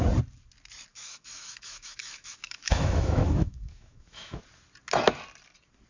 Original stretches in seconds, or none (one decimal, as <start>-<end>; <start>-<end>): 0.0-0.9; 4.4-5.9